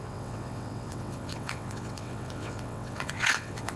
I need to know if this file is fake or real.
fake